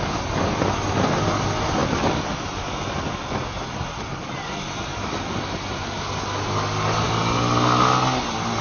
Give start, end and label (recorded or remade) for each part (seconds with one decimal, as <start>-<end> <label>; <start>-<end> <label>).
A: 0.0-8.6 recorded